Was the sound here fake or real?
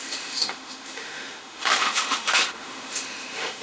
fake